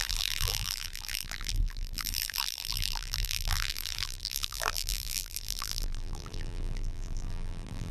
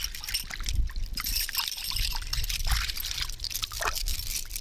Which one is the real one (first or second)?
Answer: second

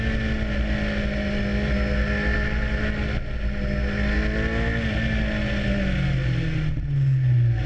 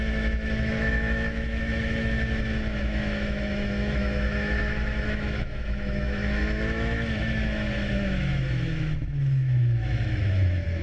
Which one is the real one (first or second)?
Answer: first